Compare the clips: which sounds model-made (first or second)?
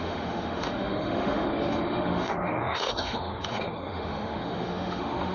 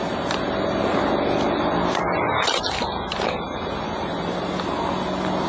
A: first